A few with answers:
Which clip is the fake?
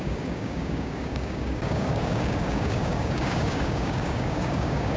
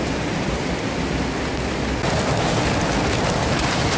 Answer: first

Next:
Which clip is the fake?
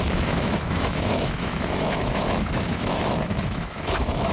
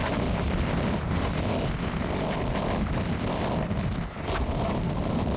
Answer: first